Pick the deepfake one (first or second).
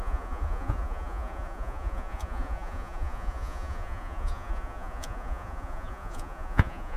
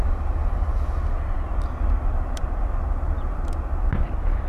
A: first